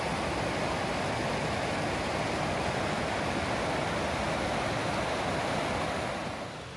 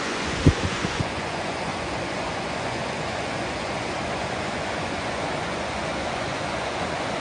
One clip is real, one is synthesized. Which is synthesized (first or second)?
second